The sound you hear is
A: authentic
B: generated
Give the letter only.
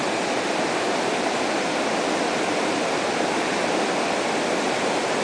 A